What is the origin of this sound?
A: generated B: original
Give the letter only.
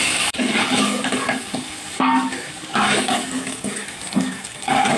A